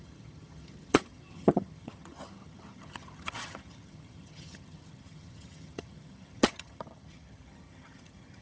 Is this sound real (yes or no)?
no